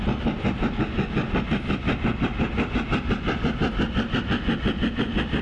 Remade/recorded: recorded